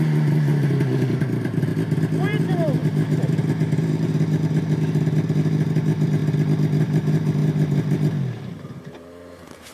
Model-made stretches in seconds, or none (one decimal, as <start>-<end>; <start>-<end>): 0.0-1.7; 2.2-6.2; 6.8-9.7